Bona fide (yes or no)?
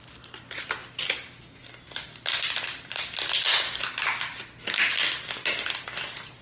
yes